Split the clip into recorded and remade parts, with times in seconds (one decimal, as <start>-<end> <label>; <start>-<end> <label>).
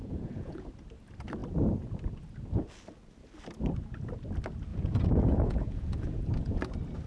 0.0-0.7 remade; 0.7-4.7 recorded; 4.7-6.6 remade; 6.6-7.1 recorded